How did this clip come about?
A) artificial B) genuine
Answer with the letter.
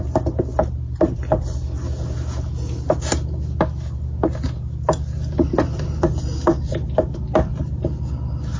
B